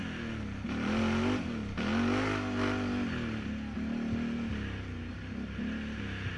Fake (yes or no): no